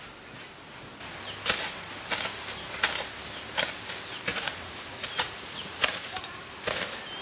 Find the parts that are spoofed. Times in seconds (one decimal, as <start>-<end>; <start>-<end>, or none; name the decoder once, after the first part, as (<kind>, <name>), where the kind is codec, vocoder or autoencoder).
4.3-6.1 (vocoder, Vocos)